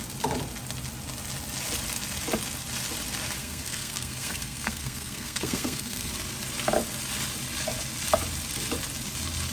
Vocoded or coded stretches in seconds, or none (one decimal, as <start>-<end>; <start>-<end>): 3.4-6.1